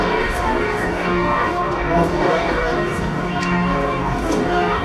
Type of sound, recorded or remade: remade